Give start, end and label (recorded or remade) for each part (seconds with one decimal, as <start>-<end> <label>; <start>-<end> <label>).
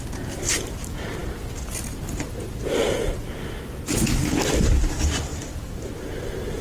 0.0-6.6 recorded